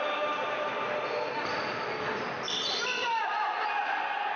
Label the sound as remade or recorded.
recorded